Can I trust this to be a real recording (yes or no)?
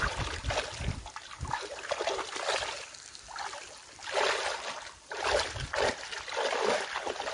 yes